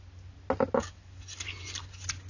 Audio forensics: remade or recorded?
recorded